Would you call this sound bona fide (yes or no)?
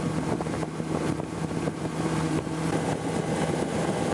no